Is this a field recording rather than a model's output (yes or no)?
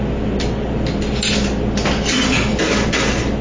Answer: yes